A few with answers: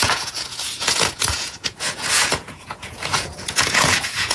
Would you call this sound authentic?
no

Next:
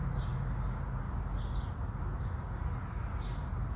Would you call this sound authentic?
yes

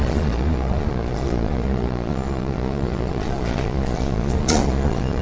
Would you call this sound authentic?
no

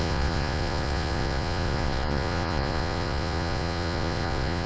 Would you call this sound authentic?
no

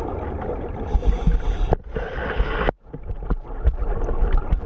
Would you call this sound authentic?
yes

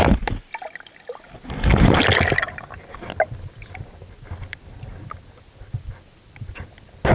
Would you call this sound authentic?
yes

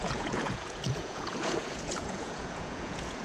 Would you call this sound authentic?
no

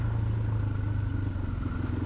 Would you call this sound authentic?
yes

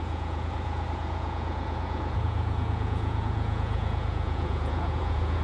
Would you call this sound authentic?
no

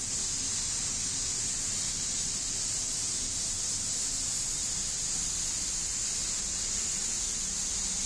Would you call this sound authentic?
yes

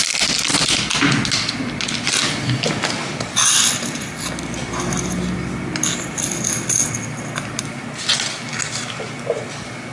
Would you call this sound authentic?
yes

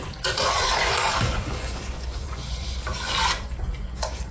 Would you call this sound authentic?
no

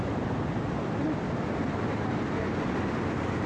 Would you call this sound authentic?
yes